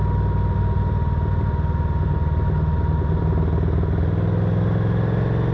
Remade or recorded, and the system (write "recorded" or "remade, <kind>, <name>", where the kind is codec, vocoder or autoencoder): recorded